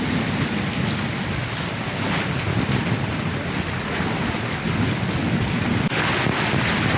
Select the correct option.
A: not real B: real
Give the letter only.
B